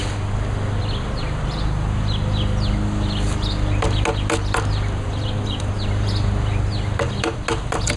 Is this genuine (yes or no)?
yes